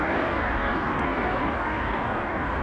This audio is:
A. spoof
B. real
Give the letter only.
A